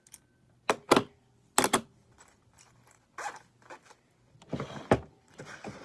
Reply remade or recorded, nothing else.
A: recorded